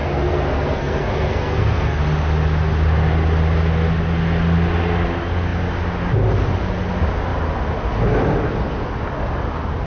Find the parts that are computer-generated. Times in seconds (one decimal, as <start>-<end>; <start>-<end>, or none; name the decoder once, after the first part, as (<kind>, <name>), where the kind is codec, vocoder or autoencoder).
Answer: 0.0-2.0 (codec, SNAC)